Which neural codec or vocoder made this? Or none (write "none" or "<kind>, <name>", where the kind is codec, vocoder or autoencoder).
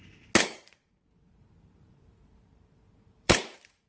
vocoder, BigVGAN v2